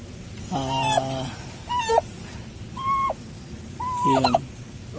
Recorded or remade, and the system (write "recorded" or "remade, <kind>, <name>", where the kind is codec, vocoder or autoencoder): recorded